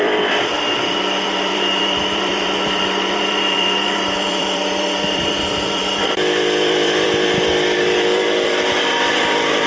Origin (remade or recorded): remade